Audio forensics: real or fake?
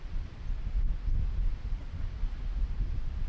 real